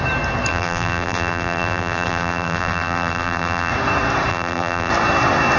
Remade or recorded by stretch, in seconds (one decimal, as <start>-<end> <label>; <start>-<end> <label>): 0.0-0.5 recorded; 0.5-3.7 remade; 3.7-4.3 recorded; 4.3-4.9 remade; 4.9-5.6 recorded